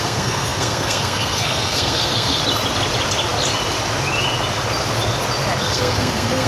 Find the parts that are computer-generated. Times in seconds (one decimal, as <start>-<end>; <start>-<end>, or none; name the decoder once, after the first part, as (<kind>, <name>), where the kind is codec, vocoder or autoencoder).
0.0-2.4 (codec, SNAC); 5.6-6.5

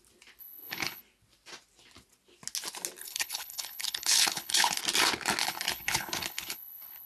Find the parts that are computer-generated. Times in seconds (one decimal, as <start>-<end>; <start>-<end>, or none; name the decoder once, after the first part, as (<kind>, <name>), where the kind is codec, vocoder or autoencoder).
0.4-1.0 (codec, HILCodec); 3.0-4.8; 5.4-7.1

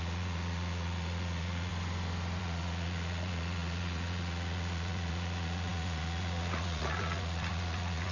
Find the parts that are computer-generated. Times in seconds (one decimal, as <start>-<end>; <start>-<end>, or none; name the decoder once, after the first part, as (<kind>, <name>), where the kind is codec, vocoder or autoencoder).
0.0-1.7 (vocoder, Vocos); 2.4-8.1

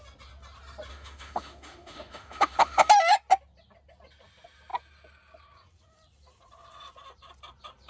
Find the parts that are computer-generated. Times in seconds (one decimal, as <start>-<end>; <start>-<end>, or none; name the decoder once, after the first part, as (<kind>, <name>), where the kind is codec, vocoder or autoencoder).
0.9-2.9 (autoencoder, DAC-VAE)

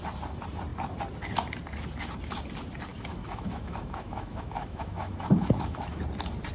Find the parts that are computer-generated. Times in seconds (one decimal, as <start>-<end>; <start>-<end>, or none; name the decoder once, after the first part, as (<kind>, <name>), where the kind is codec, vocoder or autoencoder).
2.9-6.0 (autoencoder, DAC-VAE)

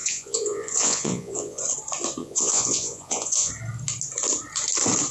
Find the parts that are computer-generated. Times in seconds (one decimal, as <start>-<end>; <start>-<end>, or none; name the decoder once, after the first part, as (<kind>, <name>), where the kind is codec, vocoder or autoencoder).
0.0-1.6 (vocoder, Vocos); 2.2-3.5

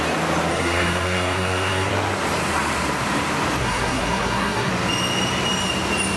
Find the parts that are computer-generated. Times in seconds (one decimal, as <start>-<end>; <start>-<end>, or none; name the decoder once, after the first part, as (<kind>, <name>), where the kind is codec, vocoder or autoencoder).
0.5-1.9 (codec, SNAC); 3.6-4.7

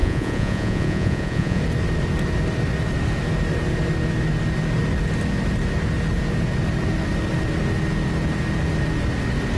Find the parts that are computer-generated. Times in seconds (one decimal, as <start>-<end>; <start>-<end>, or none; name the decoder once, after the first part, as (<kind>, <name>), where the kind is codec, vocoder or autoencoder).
0.0-1.6 (vocoder, Vocos)